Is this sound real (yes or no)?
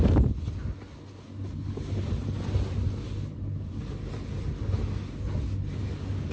yes